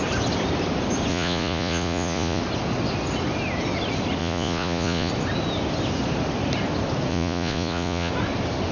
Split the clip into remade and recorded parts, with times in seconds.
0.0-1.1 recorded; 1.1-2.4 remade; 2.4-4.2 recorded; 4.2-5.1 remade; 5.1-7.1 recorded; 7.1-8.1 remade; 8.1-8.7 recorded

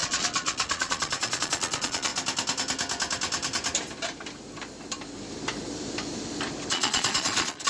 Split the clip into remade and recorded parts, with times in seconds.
0.0-2.1 remade; 2.1-6.7 recorded; 6.7-7.7 remade

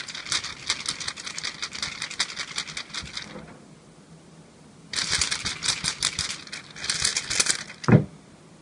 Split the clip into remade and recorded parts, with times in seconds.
0.0-8.6 recorded

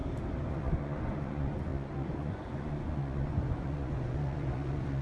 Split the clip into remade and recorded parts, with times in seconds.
0.0-0.5 recorded; 0.5-5.0 remade